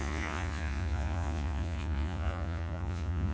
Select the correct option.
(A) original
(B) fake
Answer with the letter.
B